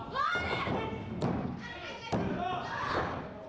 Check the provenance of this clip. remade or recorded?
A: recorded